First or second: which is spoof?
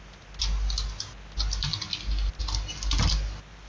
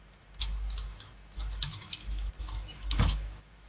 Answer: second